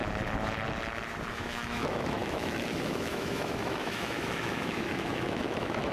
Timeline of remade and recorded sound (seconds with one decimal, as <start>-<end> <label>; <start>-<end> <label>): 0.0-1.3 recorded; 1.3-5.9 remade